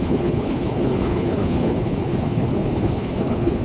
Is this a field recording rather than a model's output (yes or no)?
no